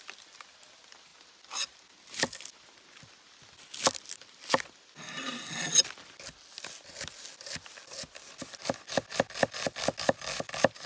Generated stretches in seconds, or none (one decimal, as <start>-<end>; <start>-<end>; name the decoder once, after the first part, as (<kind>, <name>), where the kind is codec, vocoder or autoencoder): none